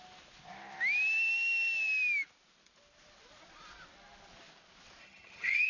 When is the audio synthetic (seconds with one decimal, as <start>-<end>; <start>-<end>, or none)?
5.0-5.7